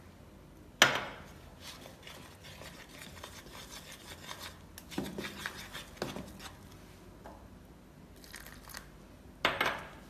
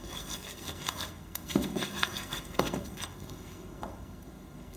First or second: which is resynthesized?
second